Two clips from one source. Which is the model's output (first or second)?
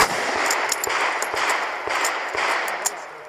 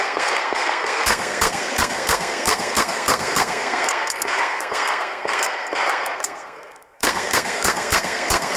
second